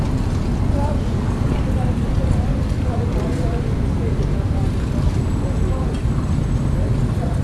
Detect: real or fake real